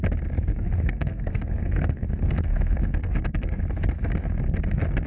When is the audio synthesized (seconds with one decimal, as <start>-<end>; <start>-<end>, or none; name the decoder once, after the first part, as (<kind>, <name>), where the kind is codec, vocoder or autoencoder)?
0.5-3.6 (codec, SNAC)